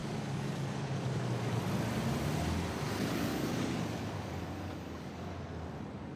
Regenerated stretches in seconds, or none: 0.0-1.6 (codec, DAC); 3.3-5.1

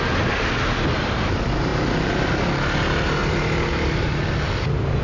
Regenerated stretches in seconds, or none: 3.2-4.1 (vocoder, BigVGAN v2)

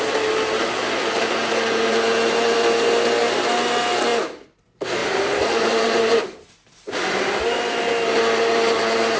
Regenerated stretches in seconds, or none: 5.0-6.2 (vocoder, BigVGAN v2)

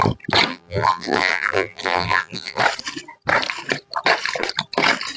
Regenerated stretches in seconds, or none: 0.5-2.6 (vocoder, BigVGAN v2)

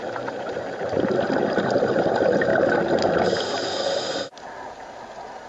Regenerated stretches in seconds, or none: none

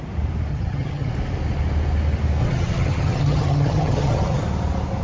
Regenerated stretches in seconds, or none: 0.5-1.1 (vocoder, HiFi-GAN); 2.4-4.4

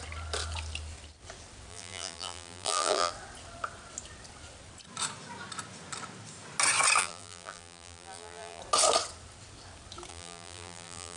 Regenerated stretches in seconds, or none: 1.7-3.1 (vocoder, BigVGAN v2); 7.0-8.6; 10.1-11.2